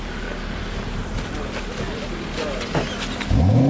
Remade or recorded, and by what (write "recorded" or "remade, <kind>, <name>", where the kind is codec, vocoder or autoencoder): recorded